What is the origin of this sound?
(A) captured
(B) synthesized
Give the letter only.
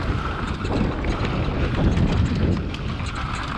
A